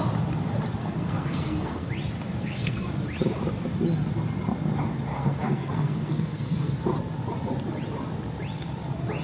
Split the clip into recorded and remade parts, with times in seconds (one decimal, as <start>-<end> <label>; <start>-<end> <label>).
0.0-0.8 recorded; 0.8-1.9 remade; 1.9-2.4 recorded; 2.4-2.9 remade; 2.9-5.1 recorded; 5.1-6.7 remade; 6.7-9.2 recorded